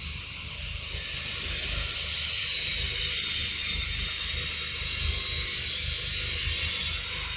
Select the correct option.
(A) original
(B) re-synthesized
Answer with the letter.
A